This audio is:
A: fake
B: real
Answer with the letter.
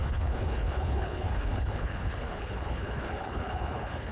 A